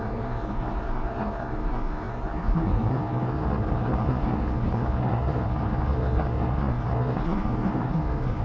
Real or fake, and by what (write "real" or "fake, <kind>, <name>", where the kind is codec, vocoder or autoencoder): fake, codec, SNAC